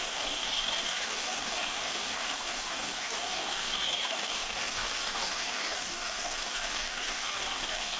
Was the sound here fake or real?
fake